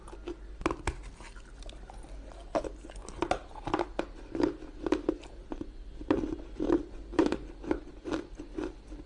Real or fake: real